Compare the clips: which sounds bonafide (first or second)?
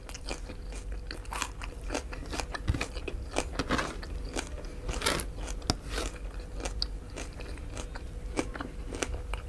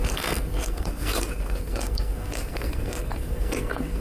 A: first